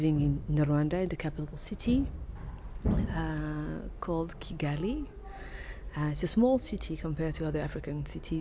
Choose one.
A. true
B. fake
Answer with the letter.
A